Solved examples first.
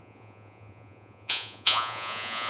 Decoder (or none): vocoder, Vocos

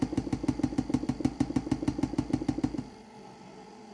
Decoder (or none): none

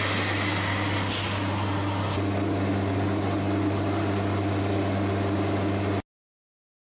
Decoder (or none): none